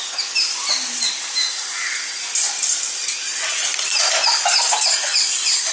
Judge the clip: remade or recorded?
recorded